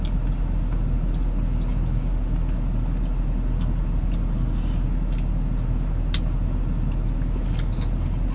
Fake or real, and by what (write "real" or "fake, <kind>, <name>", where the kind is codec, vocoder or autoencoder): real